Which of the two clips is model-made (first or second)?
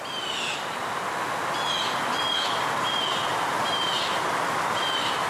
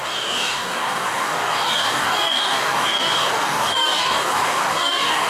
second